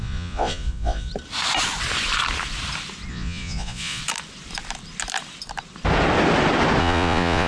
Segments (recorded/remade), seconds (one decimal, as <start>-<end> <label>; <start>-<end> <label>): 0.0-1.1 remade; 1.1-3.1 recorded; 3.1-4.0 remade; 4.0-6.8 recorded; 6.8-7.5 remade